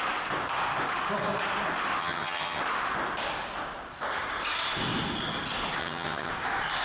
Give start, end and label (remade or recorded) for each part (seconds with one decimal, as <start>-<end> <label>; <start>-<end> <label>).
0.0-2.0 recorded; 2.0-2.6 remade; 2.6-5.8 recorded; 5.8-6.3 remade; 6.3-6.8 recorded